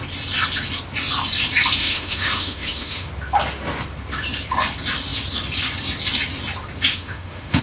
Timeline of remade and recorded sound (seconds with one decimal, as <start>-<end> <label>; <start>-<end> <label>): 0.0-1.8 recorded; 1.8-3.1 remade; 3.1-6.9 recorded; 6.9-7.6 remade